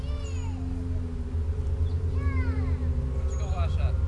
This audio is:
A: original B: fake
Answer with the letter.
A